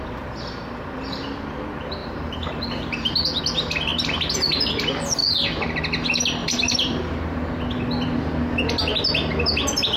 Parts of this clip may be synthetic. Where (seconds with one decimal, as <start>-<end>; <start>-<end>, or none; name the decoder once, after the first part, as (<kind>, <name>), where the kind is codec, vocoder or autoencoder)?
2.0-3.4 (vocoder, BigVGAN v2); 6.4-7.4